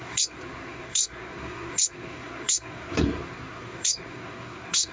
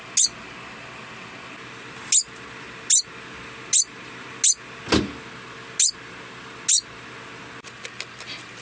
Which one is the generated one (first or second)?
first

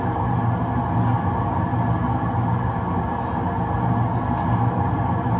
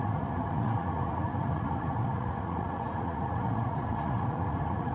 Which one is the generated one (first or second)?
second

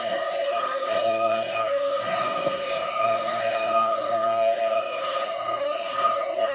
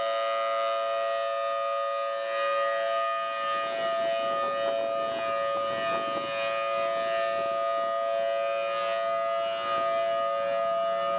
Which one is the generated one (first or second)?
first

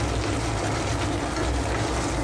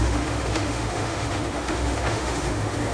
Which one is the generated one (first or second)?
second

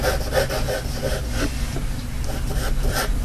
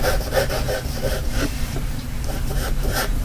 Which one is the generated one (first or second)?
second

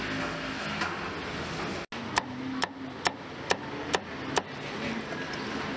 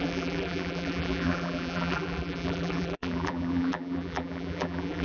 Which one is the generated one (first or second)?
second